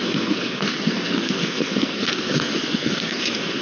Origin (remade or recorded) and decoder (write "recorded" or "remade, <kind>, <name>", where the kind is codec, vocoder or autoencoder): remade, codec, SNAC